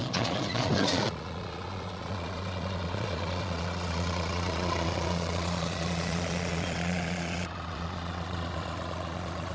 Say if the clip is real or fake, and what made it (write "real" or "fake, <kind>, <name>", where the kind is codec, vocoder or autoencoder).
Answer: fake, vocoder, Vocos